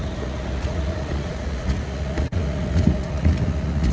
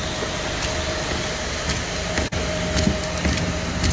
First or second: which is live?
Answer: second